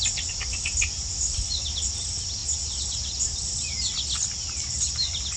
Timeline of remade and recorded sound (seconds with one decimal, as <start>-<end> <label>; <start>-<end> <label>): 0.0-5.4 recorded